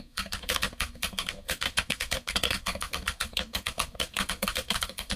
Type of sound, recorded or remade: remade